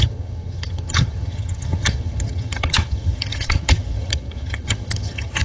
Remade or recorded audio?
remade